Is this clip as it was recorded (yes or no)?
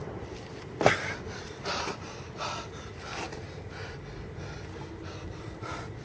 yes